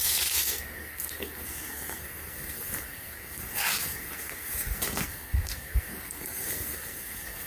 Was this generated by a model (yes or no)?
yes